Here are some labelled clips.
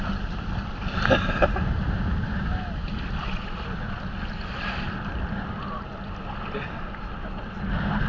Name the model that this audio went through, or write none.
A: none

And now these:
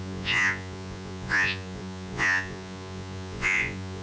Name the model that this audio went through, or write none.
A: vocoder, Vocos